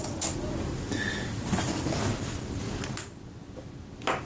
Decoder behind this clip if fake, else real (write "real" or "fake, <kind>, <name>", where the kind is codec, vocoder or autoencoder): real